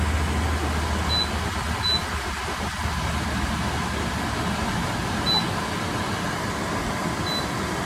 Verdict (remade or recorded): recorded